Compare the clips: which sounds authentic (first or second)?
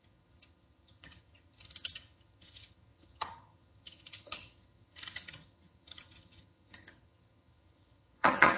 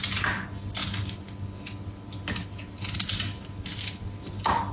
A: second